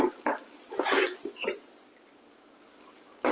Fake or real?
real